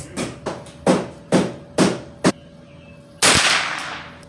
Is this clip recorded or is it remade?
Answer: recorded